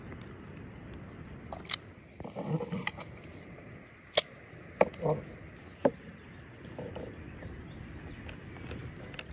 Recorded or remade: recorded